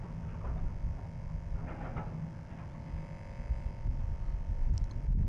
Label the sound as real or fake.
real